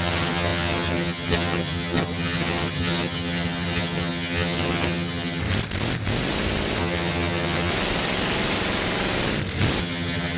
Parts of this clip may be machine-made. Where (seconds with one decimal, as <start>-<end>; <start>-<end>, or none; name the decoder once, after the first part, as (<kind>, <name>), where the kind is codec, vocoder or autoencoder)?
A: 0.0-5.4 (vocoder, HiFi-GAN); 6.8-7.7; 9.8-10.4